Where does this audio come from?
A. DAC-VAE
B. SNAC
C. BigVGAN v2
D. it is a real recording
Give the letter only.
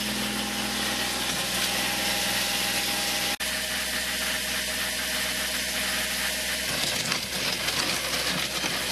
D